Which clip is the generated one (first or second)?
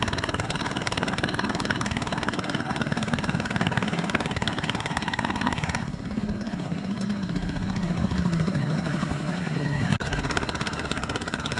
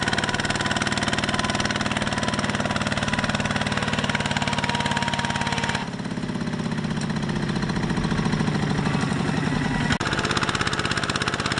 first